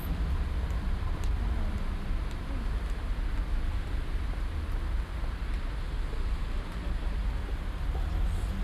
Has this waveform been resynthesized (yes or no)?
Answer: no